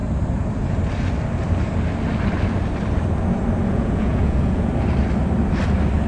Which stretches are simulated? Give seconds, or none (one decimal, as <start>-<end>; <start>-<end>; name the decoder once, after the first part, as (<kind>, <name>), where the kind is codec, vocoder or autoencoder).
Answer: 3.7-4.7 (vocoder, Vocos)